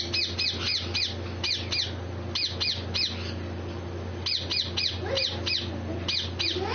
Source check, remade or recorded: recorded